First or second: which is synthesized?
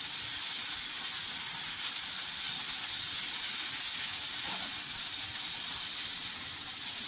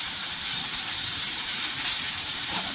second